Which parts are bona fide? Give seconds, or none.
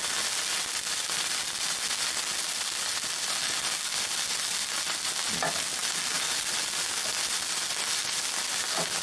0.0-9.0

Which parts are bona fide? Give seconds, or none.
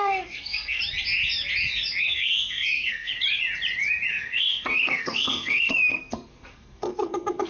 0.8-2.0; 3.1-4.1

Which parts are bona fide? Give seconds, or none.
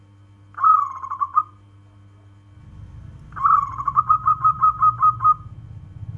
0.0-0.7; 1.4-3.7; 4.8-6.2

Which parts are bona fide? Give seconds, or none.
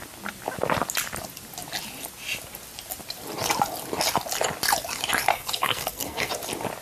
0.0-5.3; 6.3-6.8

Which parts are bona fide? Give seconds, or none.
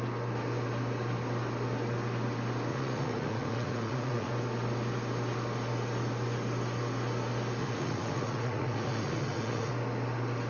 0.0-2.7; 4.3-7.6; 9.7-10.5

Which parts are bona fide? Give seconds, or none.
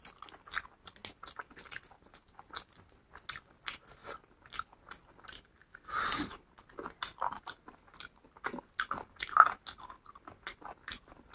0.0-11.3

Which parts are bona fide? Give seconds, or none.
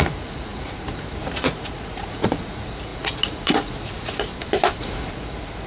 4.3-4.8